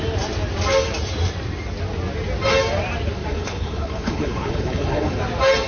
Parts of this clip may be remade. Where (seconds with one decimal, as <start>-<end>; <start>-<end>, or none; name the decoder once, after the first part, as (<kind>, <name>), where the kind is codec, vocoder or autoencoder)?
3.3-5.2 (codec, HILCodec)